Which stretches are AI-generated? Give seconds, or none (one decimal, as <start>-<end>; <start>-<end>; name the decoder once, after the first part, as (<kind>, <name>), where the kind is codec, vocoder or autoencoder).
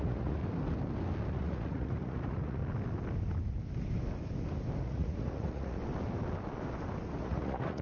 0.0-0.4 (vocoder, Vocos); 1.3-2.6; 4.8-5.8; 7.2-7.8